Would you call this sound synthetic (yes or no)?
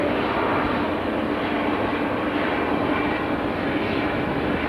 no